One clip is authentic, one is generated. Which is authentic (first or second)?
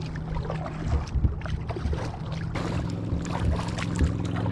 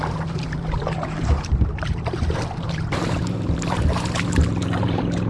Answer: first